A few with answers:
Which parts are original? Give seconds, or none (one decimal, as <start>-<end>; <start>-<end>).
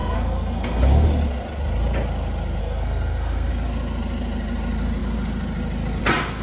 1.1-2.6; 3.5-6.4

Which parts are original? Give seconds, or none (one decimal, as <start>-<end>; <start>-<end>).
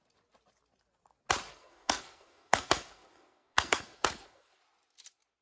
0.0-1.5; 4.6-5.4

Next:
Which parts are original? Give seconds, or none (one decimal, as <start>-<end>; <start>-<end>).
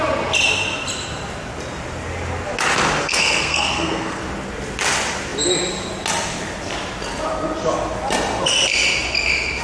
0.0-3.0; 4.2-9.6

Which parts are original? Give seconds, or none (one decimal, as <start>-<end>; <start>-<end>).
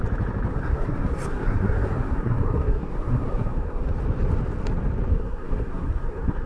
0.0-0.5; 3.9-5.1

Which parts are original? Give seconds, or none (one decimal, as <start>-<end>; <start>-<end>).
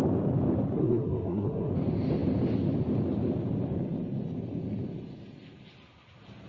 0.0-0.8; 1.7-6.5